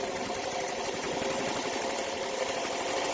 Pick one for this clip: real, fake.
fake